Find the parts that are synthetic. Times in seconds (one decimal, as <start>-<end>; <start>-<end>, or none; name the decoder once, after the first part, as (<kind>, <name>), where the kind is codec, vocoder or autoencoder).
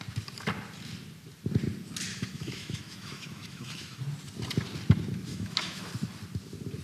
2.1-4.0 (autoencoder, DAC-VAE); 5.3-5.9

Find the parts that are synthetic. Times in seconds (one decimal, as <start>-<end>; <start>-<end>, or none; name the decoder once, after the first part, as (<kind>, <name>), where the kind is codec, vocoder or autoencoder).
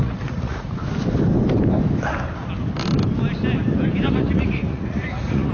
0.0-0.8 (vocoder, Vocos); 4.1-5.5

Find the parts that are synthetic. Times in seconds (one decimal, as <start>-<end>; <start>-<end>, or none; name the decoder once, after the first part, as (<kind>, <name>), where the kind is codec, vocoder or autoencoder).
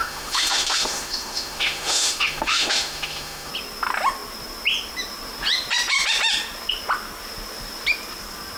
0.0-3.5 (autoencoder, DAC-VAE)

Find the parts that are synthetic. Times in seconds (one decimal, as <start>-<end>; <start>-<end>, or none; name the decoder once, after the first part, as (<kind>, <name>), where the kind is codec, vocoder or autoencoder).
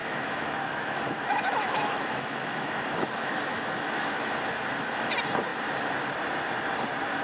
0.0-4.3 (autoencoder, DAC-VAE)